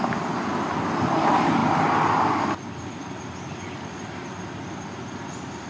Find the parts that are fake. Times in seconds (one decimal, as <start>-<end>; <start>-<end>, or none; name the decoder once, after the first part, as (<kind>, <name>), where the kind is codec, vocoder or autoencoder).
none